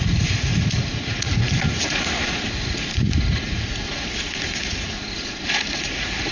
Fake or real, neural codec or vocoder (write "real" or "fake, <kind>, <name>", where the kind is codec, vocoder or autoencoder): fake, vocoder, Vocos